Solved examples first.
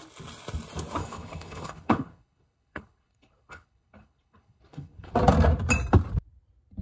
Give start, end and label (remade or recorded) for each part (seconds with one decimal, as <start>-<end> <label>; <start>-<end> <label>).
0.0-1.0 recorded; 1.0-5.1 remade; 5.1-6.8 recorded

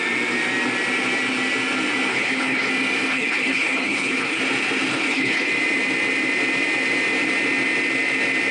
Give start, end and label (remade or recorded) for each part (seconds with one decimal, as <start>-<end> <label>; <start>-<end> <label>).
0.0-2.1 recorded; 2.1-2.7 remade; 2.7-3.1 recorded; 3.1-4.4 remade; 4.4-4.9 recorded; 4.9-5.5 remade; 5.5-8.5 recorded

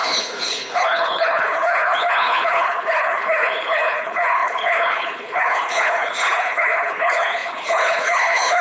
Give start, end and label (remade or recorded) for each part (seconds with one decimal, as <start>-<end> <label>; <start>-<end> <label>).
0.0-8.6 remade